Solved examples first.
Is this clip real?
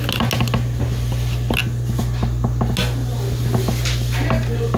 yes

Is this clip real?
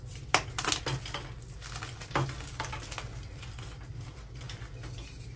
yes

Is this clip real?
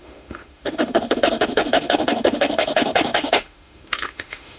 no